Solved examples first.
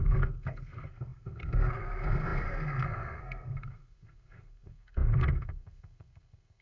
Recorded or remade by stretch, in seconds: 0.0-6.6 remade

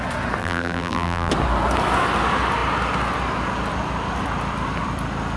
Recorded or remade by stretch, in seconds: 0.0-0.4 recorded; 0.4-1.3 remade; 1.3-5.4 recorded